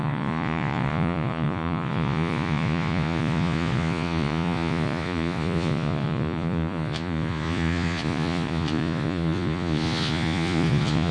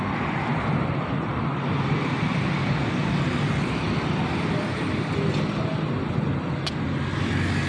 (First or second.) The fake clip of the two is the first